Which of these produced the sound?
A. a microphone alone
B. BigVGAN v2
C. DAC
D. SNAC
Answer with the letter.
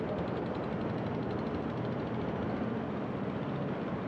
A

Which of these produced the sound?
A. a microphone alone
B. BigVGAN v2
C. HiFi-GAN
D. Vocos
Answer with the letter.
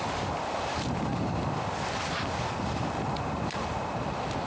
A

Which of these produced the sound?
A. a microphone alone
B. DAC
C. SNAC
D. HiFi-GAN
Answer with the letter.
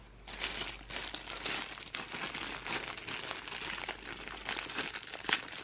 A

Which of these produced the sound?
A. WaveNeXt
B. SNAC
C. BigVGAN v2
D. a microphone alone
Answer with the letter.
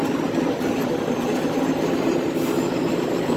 C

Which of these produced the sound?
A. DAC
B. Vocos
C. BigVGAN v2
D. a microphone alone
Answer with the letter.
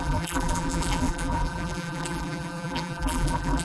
C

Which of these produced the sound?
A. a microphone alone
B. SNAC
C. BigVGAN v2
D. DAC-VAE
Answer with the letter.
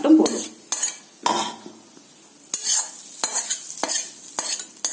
A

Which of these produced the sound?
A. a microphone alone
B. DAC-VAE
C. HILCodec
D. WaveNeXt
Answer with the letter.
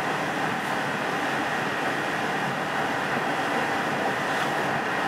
A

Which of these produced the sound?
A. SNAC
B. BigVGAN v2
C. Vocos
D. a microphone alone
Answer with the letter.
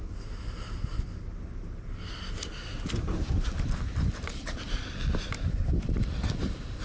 B